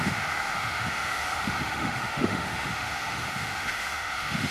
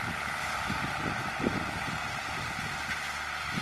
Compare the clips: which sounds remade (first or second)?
first